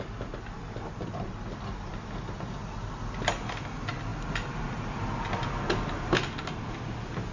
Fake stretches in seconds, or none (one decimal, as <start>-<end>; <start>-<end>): none

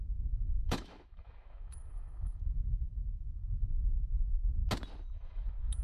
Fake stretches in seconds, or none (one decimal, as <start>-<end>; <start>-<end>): 0.0-4.6; 5.1-5.8

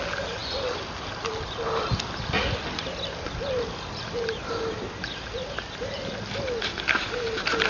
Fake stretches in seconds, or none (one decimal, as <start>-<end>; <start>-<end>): none

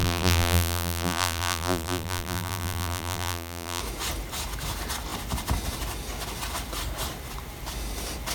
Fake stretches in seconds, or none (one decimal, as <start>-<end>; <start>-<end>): 0.0-3.8

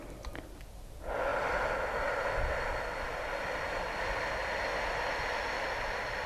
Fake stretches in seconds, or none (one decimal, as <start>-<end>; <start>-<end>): none

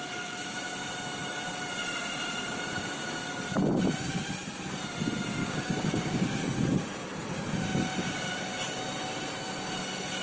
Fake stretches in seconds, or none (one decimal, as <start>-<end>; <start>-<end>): 5.4-6.4

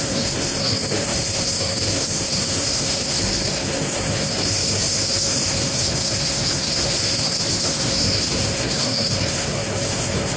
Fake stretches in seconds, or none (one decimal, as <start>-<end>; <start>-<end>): 0.0-10.4

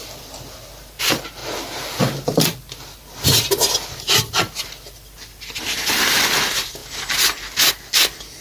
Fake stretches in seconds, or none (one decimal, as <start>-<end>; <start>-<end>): 0.0-6.8